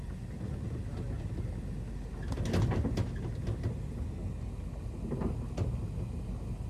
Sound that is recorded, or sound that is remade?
recorded